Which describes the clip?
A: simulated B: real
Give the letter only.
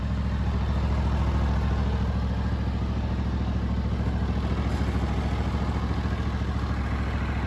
B